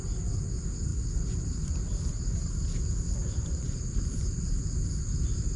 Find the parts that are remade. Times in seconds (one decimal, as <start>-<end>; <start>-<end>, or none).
0.9-2.5; 3.2-4.6